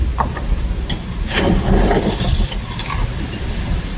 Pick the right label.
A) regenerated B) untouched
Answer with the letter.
A